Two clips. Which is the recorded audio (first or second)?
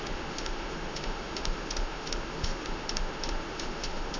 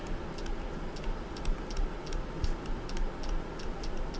second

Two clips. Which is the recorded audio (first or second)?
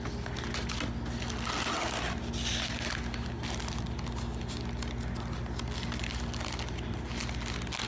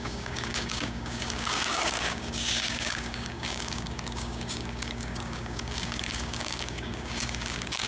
first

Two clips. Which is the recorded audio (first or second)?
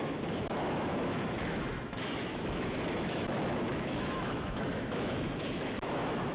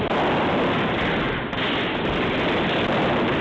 second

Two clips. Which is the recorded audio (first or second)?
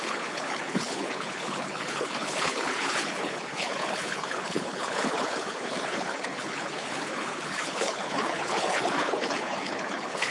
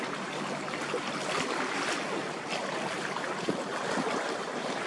second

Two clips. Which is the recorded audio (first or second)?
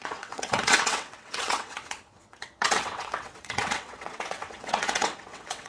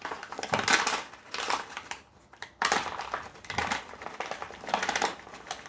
second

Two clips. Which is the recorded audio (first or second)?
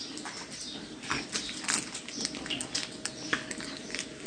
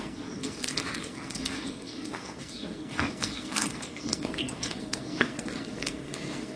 first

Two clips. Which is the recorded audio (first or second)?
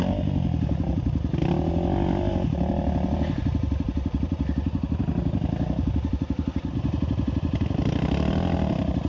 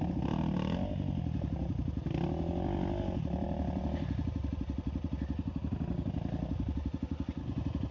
second